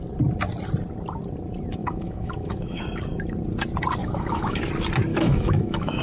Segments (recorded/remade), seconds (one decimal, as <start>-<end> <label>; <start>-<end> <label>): 0.0-1.8 recorded; 1.8-2.8 remade; 2.8-4.0 recorded; 4.0-4.6 remade; 4.6-5.1 recorded; 5.1-6.0 remade